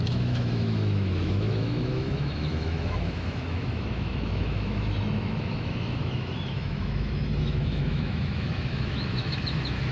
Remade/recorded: remade